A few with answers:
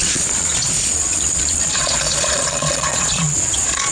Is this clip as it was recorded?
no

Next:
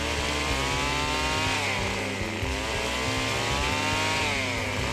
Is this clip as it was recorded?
yes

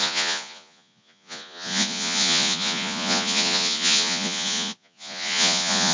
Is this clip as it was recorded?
no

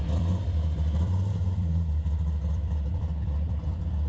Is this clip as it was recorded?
no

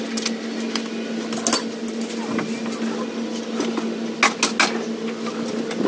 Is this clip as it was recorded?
yes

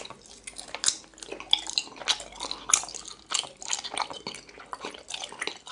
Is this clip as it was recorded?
yes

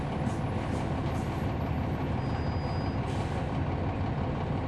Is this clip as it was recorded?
yes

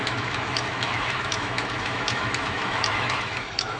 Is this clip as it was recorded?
no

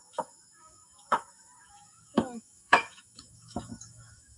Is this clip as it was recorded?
no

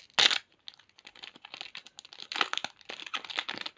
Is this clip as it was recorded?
yes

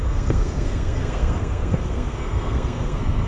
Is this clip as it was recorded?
no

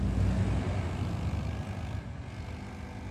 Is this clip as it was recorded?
yes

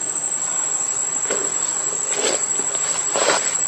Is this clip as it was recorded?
yes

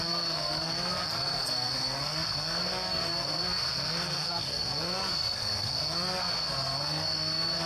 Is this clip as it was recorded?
no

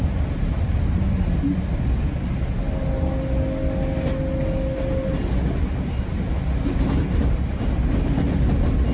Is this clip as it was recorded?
yes